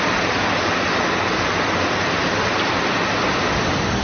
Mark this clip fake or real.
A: real